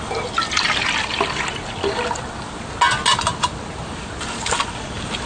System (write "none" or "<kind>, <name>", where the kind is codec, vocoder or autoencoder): none